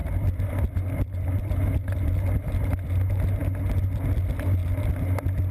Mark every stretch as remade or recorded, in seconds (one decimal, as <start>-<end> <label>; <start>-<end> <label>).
0.0-2.1 remade; 2.1-5.5 recorded